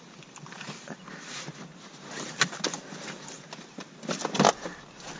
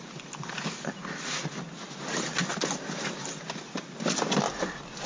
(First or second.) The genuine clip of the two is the second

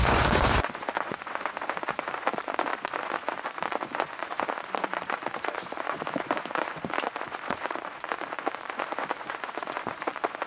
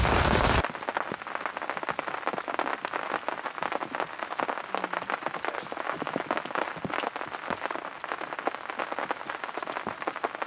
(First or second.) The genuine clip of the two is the second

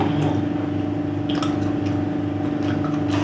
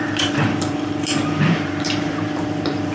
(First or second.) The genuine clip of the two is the first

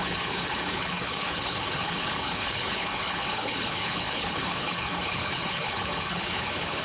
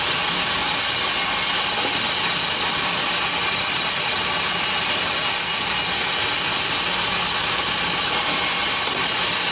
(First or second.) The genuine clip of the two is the second